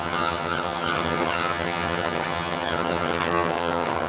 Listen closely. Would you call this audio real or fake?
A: fake